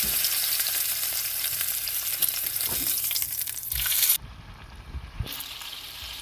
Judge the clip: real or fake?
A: fake